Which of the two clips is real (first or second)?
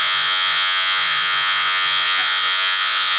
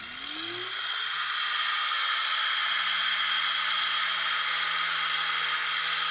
second